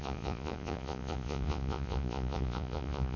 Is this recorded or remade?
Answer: remade